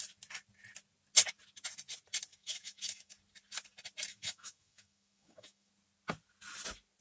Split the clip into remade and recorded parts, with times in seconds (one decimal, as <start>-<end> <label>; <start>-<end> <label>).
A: 0.0-2.3 recorded; 2.3-3.1 remade; 3.1-4.1 recorded; 4.1-5.7 remade; 5.7-7.0 recorded